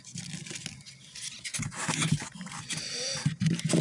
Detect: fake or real real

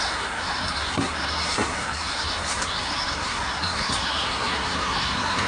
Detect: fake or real fake